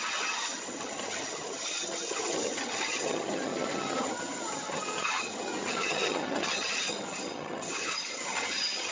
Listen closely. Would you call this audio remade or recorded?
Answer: remade